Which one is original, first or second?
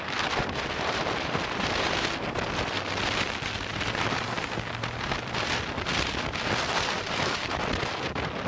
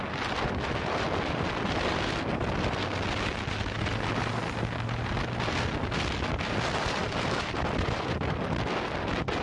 second